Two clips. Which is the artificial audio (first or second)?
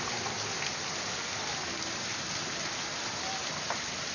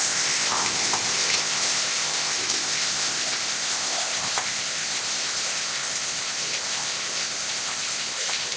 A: second